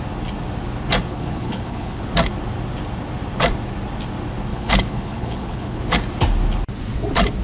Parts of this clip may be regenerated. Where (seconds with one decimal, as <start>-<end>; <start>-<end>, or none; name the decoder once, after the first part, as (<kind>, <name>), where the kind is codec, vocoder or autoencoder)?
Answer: 1.1-2.0 (codec, HILCodec); 4.5-5.8